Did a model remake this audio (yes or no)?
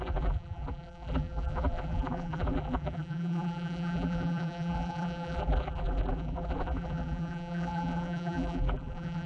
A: yes